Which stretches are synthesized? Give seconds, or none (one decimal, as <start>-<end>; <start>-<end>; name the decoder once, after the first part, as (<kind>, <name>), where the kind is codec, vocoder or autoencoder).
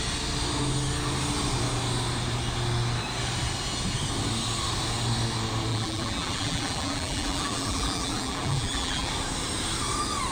5.7-9.1 (vocoder, BigVGAN v2)